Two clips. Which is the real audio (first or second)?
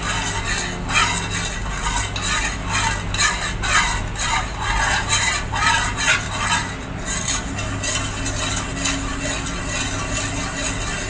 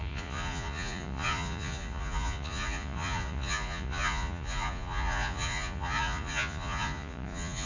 first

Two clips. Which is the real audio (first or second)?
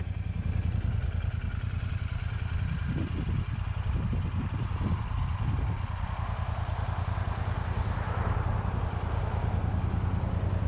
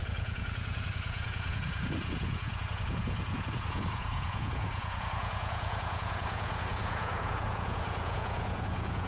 first